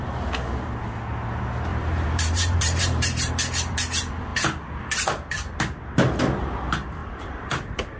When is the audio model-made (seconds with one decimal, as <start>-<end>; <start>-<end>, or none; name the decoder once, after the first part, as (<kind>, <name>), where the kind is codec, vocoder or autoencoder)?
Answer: 1.7-3.3 (vocoder, BigVGAN v2); 7.0-8.0

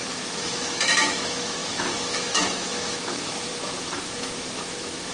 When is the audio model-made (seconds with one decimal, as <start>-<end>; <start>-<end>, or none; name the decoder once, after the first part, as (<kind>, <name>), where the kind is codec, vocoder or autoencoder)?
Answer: 0.0-5.1 (autoencoder, DAC-VAE)

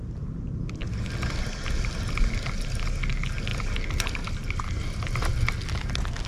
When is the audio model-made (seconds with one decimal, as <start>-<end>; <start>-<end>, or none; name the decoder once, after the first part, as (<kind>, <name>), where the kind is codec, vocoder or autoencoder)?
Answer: none

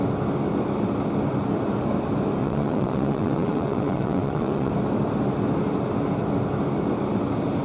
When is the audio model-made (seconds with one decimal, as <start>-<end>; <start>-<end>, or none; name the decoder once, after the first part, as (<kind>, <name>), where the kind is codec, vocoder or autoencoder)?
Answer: 2.4-4.7 (vocoder, WaveNeXt)

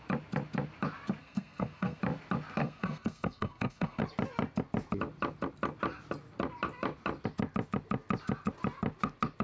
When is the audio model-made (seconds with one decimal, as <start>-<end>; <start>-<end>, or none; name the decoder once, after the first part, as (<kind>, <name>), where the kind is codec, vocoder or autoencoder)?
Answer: 1.2-2.0 (codec, SNAC); 2.6-4.0

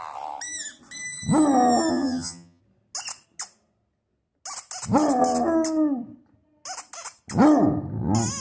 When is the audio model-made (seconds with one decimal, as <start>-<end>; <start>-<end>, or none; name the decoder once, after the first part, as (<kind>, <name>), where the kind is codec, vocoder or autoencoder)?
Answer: 1.9-2.6 (vocoder, HiFi-GAN)

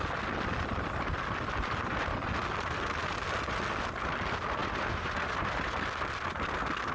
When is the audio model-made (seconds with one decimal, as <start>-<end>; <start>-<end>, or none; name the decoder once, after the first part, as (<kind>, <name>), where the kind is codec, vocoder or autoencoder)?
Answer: 4.6-5.8 (vocoder, BigVGAN v2)

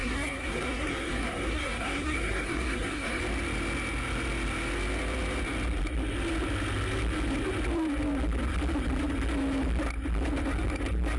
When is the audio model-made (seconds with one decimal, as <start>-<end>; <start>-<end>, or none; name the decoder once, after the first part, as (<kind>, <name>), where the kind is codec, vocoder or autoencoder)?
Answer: 0.0-3.2 (codec, SNAC)